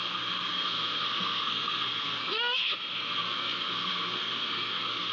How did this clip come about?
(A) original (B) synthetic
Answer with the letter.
B